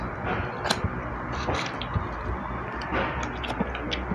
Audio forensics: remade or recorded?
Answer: recorded